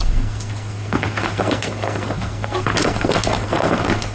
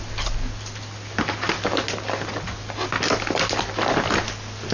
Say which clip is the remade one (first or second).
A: first